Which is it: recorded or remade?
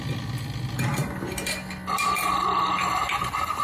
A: recorded